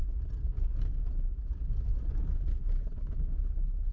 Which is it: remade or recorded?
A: recorded